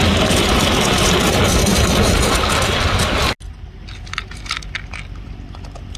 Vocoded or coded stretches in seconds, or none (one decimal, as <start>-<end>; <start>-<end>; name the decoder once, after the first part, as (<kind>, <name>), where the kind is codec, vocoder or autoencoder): none